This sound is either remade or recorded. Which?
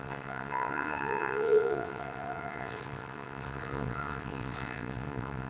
remade